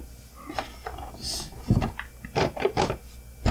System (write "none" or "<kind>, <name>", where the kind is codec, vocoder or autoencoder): none